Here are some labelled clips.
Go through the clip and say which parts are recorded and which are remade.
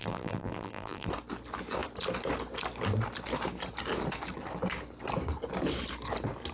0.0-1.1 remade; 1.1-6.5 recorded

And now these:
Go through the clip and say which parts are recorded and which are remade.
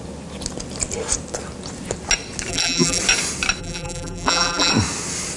0.0-2.5 recorded; 2.5-3.0 remade; 3.0-3.6 recorded; 3.6-4.7 remade; 4.7-5.4 recorded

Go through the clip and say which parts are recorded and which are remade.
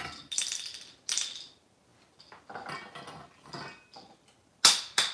0.0-5.1 recorded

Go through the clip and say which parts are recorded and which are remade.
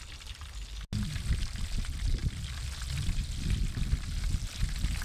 0.0-5.0 recorded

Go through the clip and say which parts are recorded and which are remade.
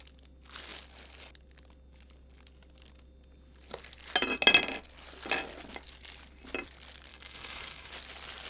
0.0-7.1 recorded; 7.1-7.9 remade; 7.9-8.5 recorded